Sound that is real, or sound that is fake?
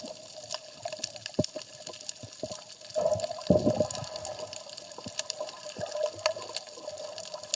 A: real